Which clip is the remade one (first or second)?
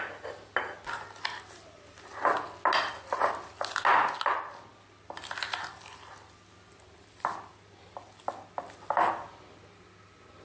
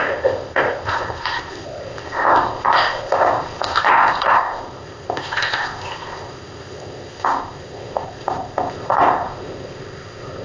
second